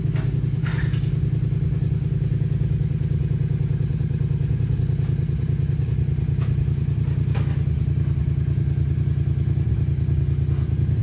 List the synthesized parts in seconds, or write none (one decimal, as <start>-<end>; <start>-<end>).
none